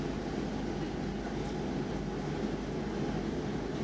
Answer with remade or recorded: recorded